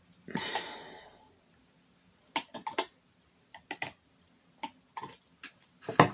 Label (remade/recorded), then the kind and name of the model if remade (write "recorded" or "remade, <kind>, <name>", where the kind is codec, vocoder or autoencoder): recorded